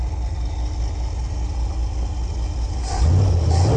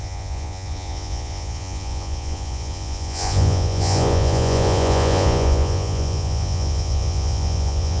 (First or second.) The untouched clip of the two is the first